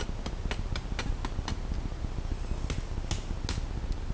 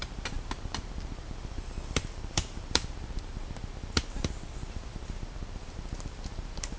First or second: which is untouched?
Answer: first